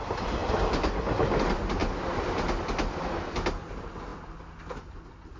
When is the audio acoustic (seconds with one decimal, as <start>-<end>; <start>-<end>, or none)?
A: 0.0-5.4